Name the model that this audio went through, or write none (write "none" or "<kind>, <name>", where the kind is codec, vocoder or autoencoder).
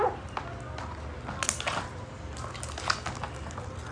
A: none